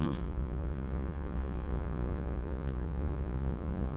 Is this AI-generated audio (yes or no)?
yes